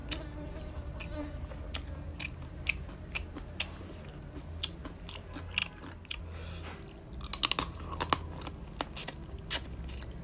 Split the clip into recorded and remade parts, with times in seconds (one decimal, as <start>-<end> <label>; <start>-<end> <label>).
0.0-0.7 remade; 0.7-5.6 recorded; 5.6-6.2 remade; 6.2-10.2 recorded